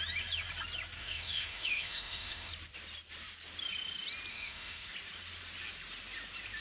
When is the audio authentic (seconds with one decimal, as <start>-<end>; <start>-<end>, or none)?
0.0-1.0; 2.5-4.3; 4.9-6.6